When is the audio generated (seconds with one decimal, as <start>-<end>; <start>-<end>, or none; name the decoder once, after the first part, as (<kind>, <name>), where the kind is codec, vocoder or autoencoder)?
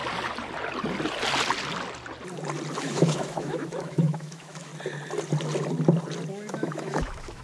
2.8-4.7 (autoencoder, DAC-VAE); 6.3-7.4